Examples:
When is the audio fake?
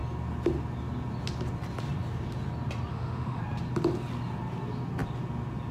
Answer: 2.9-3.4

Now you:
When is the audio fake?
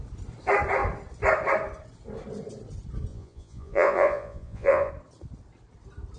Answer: 3.1-4.9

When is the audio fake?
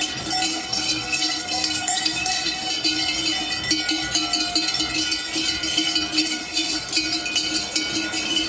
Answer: 0.5-2.7; 6.2-6.9